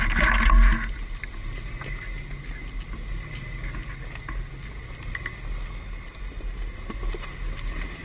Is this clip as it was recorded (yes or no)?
yes